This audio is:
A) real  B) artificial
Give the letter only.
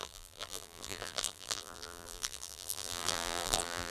B